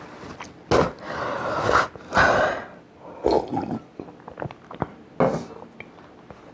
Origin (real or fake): real